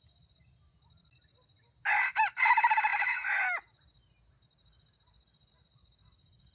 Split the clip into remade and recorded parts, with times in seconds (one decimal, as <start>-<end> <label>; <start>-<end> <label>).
0.0-6.5 recorded